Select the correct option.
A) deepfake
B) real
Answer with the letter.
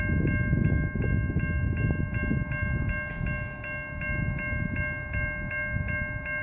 B